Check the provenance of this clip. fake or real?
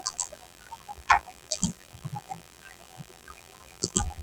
fake